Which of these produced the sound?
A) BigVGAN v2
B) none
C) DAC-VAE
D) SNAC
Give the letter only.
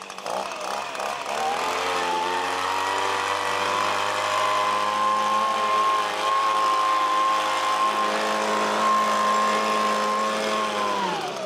B